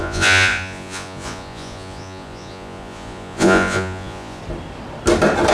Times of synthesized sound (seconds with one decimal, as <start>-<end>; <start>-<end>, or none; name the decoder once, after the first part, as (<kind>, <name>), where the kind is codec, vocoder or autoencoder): 0.0-4.4 (vocoder, Vocos)